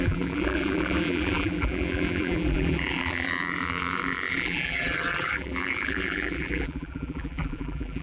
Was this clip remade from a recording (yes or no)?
yes